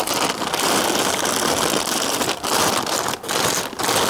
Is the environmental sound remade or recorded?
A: recorded